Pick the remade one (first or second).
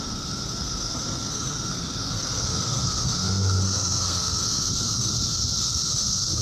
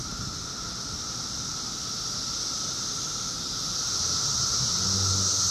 first